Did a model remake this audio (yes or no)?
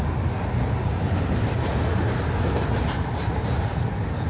no